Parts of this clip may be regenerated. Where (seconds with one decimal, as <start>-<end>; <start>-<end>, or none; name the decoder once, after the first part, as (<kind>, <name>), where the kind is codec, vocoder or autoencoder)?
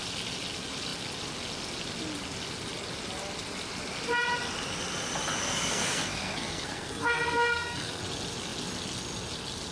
5.4-8.0 (codec, SNAC)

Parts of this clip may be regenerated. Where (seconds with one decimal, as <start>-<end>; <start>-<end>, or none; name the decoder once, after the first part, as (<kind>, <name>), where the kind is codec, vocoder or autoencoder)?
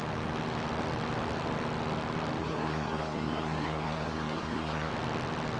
2.4-4.9 (codec, SNAC)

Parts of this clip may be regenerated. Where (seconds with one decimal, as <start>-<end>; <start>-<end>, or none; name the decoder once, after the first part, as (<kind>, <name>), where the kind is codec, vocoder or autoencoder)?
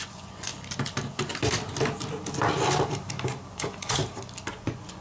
0.0-0.5 (vocoder, Vocos); 3.5-4.0; 4.5-5.0